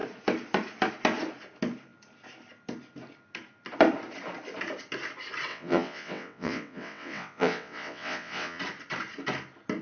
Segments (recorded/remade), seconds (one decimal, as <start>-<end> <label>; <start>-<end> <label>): 0.0-5.5 recorded; 5.5-8.6 remade; 8.6-9.8 recorded